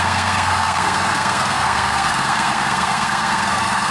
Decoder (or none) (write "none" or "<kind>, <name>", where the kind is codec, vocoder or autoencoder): codec, SNAC